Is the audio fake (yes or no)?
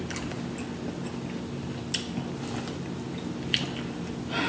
no